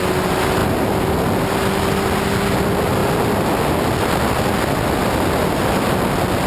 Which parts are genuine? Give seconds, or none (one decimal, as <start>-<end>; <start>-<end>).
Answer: 0.0-6.5